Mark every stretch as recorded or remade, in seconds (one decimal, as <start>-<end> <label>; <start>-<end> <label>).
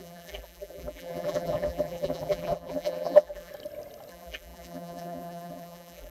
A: 0.0-3.5 remade; 3.5-4.1 recorded; 4.1-6.1 remade